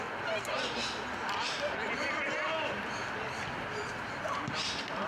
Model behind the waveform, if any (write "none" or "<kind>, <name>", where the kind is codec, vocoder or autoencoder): none